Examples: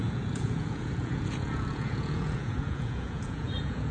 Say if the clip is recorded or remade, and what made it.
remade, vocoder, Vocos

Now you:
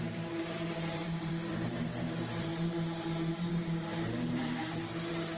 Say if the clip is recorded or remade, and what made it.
remade, vocoder, BigVGAN v2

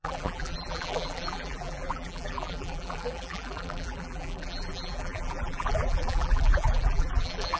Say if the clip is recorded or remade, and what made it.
remade, vocoder, BigVGAN v2